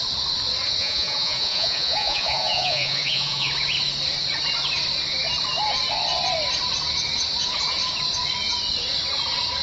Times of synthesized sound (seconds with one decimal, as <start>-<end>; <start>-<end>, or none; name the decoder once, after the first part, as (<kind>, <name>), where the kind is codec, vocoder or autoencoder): 0.8-3.5 (vocoder, Vocos)

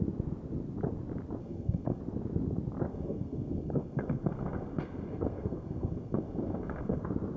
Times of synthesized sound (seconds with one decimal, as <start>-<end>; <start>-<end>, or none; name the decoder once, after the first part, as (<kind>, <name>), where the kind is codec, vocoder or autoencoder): 1.4-2.0 (codec, SNAC); 2.9-7.0

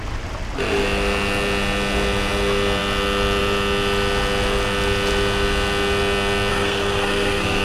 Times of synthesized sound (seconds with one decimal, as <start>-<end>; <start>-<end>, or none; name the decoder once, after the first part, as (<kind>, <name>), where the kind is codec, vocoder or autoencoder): 6.5-7.6 (codec, SNAC)

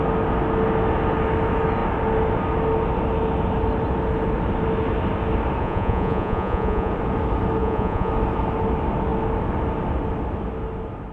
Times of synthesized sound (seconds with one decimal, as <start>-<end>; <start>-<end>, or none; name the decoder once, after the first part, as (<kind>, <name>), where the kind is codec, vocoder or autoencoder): 5.6-6.9 (vocoder, Vocos); 7.6-8.1

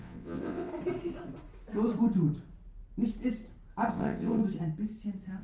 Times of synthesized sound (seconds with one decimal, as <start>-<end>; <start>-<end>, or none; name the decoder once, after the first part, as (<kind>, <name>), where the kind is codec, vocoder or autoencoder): 0.0-0.7 (vocoder, WaveNeXt); 3.9-4.4

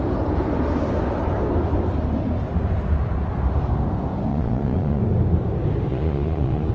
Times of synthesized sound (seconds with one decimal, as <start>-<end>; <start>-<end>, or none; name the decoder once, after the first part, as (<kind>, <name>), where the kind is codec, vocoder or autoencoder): 4.3-5.0 (vocoder, Vocos); 5.9-6.7

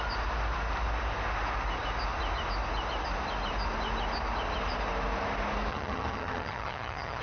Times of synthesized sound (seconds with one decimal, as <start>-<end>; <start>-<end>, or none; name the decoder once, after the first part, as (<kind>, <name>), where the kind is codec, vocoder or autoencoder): 5.7-7.2 (vocoder, HiFi-GAN)